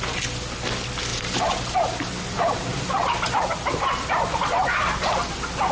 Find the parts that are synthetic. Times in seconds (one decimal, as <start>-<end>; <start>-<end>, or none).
1.1-4.5